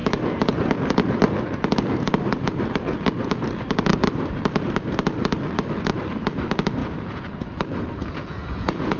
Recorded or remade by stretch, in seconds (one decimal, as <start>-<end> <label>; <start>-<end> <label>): 0.0-6.8 recorded; 6.8-7.3 remade; 7.3-8.0 recorded; 8.0-9.0 remade